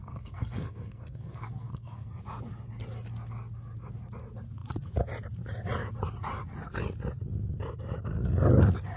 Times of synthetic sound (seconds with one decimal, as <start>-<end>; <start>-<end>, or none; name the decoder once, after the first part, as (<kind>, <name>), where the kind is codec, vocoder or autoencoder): 0.0-2.2 (codec, SNAC)